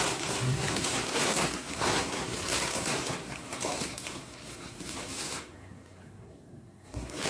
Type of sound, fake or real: fake